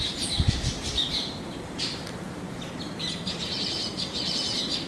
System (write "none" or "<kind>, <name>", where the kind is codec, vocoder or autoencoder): vocoder, BigVGAN v2